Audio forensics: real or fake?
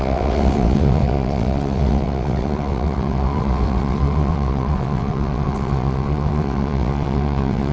fake